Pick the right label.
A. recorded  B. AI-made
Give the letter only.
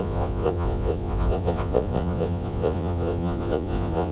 B